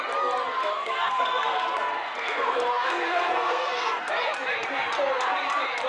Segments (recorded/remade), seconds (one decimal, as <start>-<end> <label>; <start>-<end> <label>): 0.0-0.6 recorded; 0.6-4.1 remade; 4.1-5.9 recorded